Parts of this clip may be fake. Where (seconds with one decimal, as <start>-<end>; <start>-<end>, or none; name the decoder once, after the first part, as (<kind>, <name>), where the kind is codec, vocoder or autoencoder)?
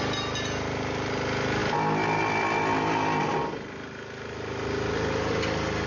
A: none